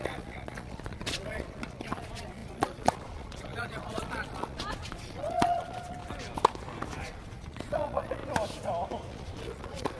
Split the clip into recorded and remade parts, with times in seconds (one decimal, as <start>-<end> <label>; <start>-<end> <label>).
0.0-6.0 remade; 6.0-7.0 recorded; 7.0-8.2 remade; 8.2-9.1 recorded; 9.1-10.0 remade